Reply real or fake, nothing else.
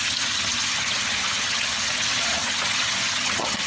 fake